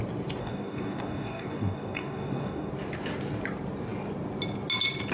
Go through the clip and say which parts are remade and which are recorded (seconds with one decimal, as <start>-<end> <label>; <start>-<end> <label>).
0.0-0.4 recorded; 0.4-2.7 remade; 2.7-5.1 recorded